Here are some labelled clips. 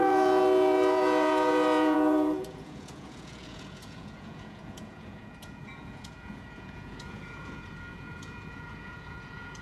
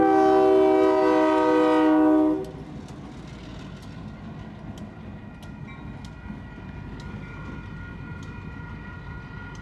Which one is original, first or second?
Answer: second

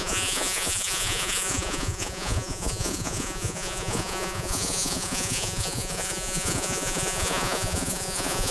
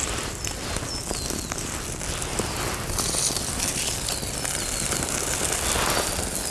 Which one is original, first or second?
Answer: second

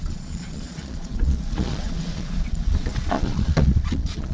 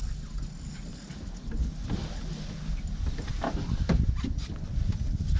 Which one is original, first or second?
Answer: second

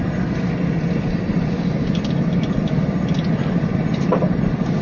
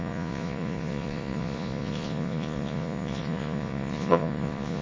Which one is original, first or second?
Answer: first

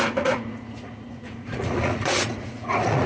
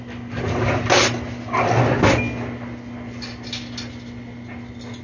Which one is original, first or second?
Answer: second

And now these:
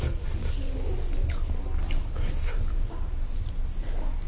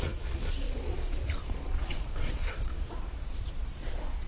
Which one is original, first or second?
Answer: first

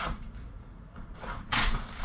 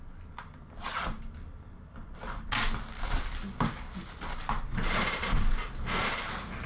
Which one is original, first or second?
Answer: second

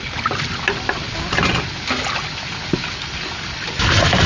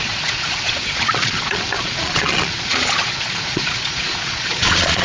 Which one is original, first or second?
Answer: first